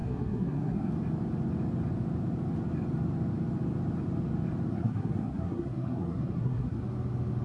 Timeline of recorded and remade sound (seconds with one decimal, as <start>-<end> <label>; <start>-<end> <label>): 0.0-0.9 remade; 0.9-4.7 recorded; 4.7-6.8 remade; 6.8-7.4 recorded